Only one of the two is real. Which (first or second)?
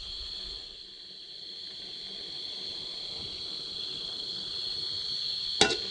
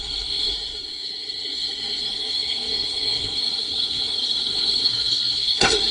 first